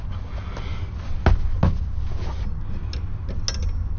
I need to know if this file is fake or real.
real